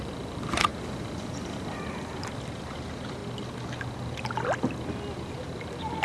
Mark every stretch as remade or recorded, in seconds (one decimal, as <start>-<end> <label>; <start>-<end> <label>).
0.0-0.7 remade; 0.7-2.4 recorded; 2.4-3.2 remade; 3.2-5.6 recorded; 5.6-6.0 remade